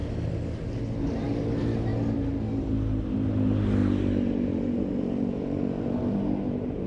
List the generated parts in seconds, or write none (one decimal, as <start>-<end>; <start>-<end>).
3.8-6.9